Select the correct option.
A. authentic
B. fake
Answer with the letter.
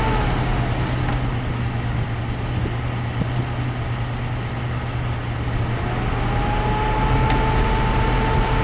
A